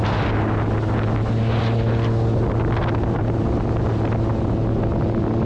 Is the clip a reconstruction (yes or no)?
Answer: no